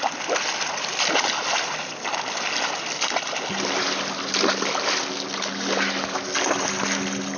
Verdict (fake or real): real